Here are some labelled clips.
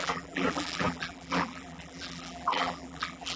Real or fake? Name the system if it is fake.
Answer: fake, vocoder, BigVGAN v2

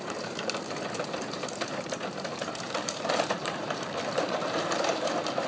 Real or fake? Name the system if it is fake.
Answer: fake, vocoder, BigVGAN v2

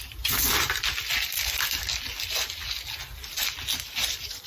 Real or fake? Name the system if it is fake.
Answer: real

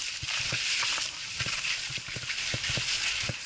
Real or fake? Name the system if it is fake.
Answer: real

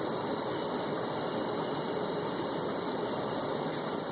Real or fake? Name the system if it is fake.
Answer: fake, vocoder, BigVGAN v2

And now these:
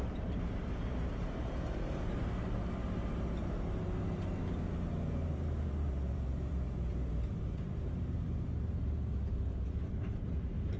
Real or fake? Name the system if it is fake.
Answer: fake, vocoder, BigVGAN v2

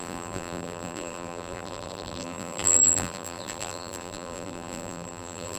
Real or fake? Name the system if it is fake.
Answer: fake, vocoder, BigVGAN v2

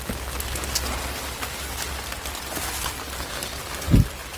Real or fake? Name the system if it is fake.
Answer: real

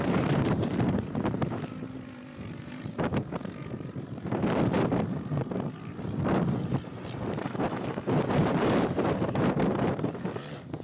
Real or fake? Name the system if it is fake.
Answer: fake, vocoder, BigVGAN v2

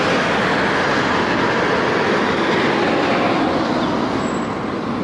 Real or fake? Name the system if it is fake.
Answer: real